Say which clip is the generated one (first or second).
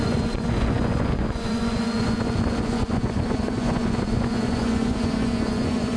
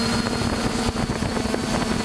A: first